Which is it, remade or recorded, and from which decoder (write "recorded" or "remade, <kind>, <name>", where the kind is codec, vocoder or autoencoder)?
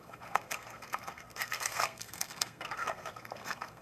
remade, codec, SNAC